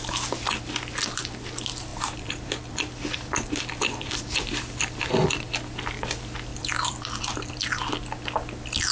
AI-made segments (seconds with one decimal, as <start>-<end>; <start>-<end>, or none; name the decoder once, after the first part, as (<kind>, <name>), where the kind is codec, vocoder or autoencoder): 1.9-5.4 (vocoder, BigVGAN v2); 6.5-7.2